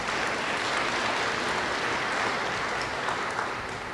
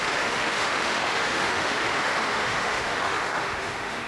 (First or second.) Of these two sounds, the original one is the first